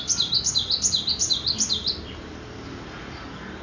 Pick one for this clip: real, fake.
real